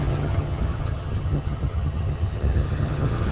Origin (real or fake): fake